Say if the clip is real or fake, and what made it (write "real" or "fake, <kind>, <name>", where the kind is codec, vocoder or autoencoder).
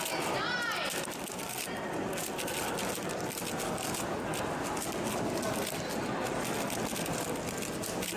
real